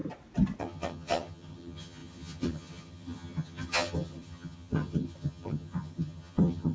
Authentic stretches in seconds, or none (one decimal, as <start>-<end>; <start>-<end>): 0.0-0.6